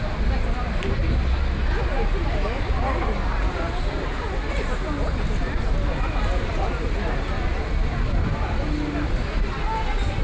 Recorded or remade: recorded